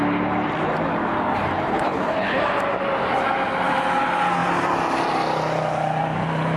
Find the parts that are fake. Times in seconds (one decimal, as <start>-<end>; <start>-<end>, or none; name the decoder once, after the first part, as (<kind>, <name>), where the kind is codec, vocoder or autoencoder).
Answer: 1.7-2.4 (codec, HILCodec)